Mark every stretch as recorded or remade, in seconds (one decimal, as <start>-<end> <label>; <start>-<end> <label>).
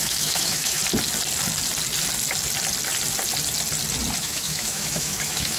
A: 0.0-0.8 remade; 0.8-4.2 recorded; 4.2-5.6 remade